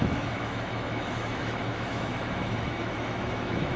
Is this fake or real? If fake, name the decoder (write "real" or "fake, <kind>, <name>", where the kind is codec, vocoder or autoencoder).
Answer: fake, autoencoder, DAC-VAE